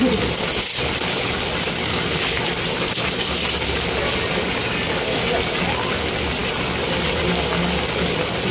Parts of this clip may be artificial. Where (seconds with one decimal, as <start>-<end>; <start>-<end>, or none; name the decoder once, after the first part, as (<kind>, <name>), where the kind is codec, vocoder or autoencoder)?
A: 1.9-2.4 (codec, HILCodec)

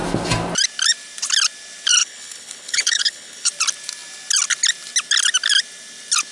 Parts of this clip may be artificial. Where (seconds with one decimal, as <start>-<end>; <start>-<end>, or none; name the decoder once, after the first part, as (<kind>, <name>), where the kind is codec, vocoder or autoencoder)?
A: 2.0-3.5 (codec, HILCodec)

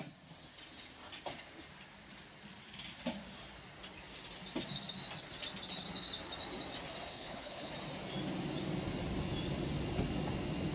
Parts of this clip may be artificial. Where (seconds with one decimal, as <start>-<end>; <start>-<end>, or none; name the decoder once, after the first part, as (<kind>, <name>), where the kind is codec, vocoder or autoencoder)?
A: 7.1-7.7 (codec, HILCodec)